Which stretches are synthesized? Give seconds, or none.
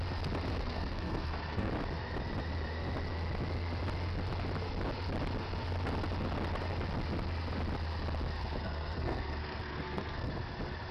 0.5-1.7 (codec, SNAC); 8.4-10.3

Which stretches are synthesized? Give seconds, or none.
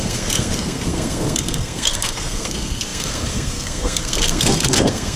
0.0-5.2 (codec, SNAC)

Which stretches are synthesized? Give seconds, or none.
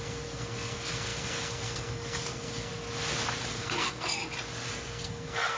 0.0-2.7 (codec, SNAC); 3.5-4.2; 4.7-5.6